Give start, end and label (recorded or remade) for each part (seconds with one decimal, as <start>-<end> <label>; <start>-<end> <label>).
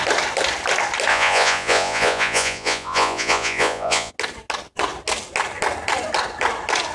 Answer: 0.0-1.1 recorded; 1.1-4.1 remade; 4.1-6.9 recorded